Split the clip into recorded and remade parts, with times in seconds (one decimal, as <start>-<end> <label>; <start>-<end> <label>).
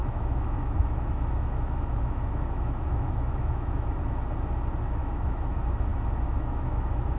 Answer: 0.0-4.0 remade; 4.0-5.0 recorded; 5.0-5.5 remade; 5.5-5.9 recorded; 5.9-7.2 remade